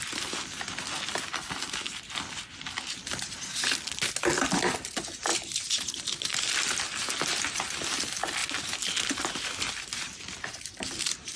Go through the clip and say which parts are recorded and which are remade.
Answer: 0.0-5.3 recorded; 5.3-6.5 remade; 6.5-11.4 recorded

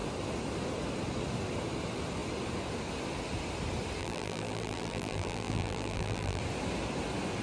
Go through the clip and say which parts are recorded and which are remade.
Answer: 0.0-4.0 recorded; 4.0-6.4 remade; 6.4-7.4 recorded

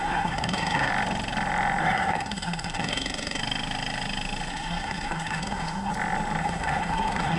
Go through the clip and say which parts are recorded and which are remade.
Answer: 0.0-0.9 remade; 0.9-1.8 recorded; 1.8-3.4 remade; 3.4-4.5 recorded; 4.5-5.9 remade; 5.9-6.4 recorded; 6.4-7.4 remade

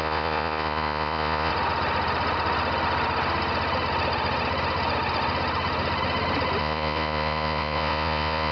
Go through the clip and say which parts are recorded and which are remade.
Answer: 0.0-1.5 remade; 1.5-6.6 recorded; 6.6-8.5 remade

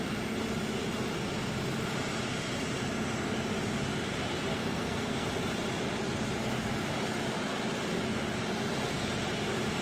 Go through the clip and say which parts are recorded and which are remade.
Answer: 0.0-4.5 recorded; 4.5-5.3 remade; 5.3-9.8 recorded

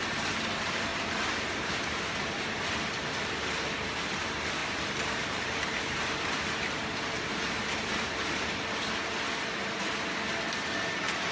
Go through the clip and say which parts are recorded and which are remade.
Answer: 0.0-0.9 recorded; 0.9-3.4 remade; 3.4-4.6 recorded; 4.6-8.1 remade; 8.1-11.3 recorded